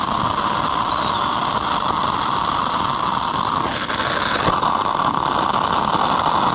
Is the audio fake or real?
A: real